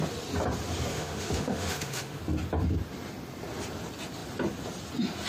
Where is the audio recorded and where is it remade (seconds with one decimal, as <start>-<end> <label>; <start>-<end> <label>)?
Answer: 0.0-0.9 recorded; 0.9-2.2 remade; 2.2-5.3 recorded